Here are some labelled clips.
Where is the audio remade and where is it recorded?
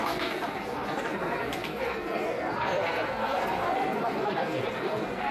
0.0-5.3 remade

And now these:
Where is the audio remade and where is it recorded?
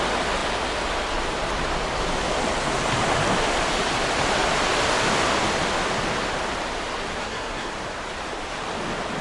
0.0-7.2 recorded; 7.2-7.7 remade; 7.7-9.2 recorded